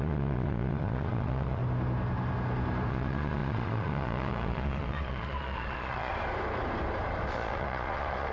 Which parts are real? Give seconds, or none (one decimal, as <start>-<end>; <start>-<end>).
1.6-2.9; 6.1-7.3